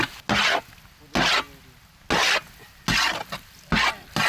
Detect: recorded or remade recorded